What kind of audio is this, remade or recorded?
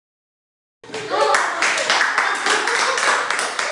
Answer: recorded